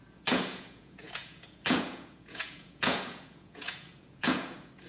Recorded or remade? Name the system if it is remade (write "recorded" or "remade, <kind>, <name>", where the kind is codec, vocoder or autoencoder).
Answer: remade, vocoder, Vocos